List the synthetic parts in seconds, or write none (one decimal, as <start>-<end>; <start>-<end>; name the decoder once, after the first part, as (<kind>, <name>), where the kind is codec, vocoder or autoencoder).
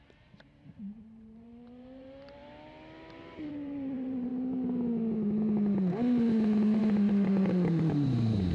0.0-2.4 (vocoder, BigVGAN v2); 3.5-4.3; 6.8-8.5